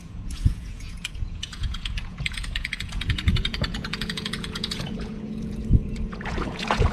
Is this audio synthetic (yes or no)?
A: yes